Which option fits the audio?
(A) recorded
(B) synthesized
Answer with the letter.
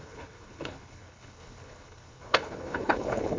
B